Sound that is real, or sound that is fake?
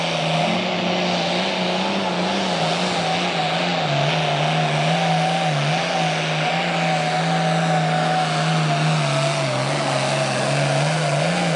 real